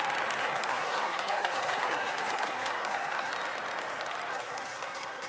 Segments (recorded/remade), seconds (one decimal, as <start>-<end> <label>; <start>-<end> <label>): 0.0-0.4 recorded; 0.4-3.3 remade; 3.3-4.3 recorded; 4.3-5.3 remade